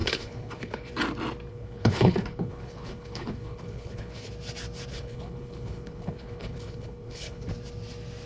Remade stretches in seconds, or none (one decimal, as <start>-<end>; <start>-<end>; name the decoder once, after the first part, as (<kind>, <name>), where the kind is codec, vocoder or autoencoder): 0.0-0.9 (codec, HILCodec); 1.5-4.3; 4.9-7.5